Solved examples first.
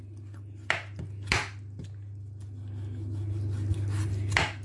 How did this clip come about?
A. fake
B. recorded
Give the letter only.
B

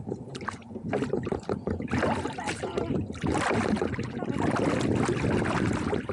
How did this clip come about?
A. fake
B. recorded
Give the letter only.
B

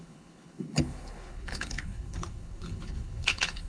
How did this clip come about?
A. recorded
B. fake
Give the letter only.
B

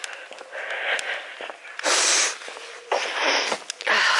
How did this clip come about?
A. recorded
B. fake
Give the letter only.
A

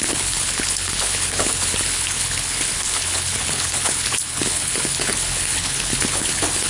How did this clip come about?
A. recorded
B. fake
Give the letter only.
B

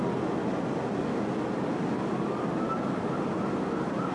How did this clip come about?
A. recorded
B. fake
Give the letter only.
A